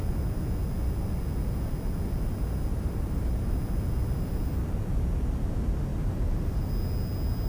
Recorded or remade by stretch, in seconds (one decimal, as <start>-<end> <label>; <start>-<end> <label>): 0.0-2.7 recorded; 2.7-3.5 remade; 3.5-5.9 recorded; 5.9-6.7 remade; 6.7-7.5 recorded